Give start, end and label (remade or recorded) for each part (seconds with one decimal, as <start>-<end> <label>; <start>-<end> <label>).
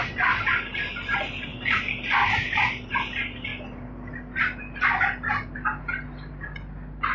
0.0-7.1 recorded